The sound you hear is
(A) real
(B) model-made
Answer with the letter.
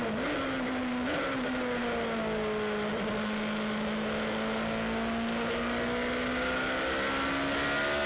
A